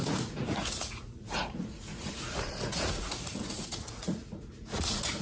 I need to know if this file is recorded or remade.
remade